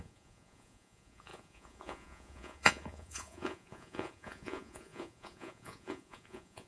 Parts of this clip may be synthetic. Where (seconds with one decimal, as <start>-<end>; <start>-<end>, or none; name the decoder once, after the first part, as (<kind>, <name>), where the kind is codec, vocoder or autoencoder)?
0.0-6.7 (vocoder, Vocos)